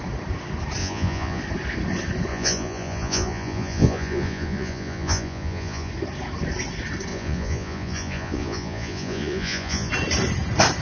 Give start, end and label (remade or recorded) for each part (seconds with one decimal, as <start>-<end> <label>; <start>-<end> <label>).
0.0-0.8 recorded; 0.8-1.4 remade; 1.4-2.3 recorded; 2.3-5.9 remade; 5.9-7.1 recorded; 7.1-9.9 remade; 9.9-10.8 recorded